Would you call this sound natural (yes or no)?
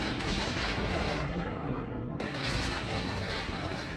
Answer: no